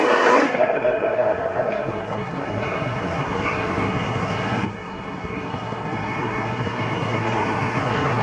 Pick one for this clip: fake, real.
fake